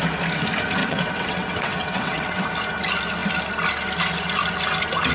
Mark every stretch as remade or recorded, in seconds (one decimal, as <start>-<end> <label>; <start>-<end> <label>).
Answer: 0.0-0.8 recorded; 0.8-2.5 remade; 2.5-5.1 recorded